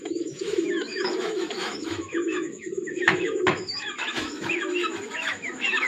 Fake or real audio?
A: fake